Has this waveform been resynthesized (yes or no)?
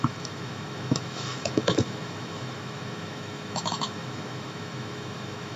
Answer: yes